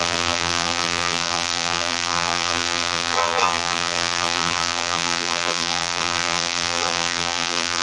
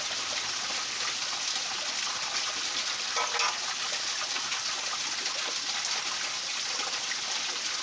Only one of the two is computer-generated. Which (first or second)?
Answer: first